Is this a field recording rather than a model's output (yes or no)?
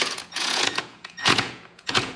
no